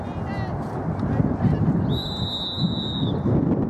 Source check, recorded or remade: recorded